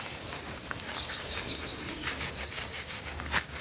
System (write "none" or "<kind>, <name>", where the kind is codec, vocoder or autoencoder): codec, DAC